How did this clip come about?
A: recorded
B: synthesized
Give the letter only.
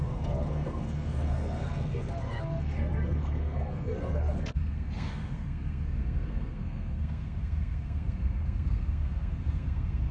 B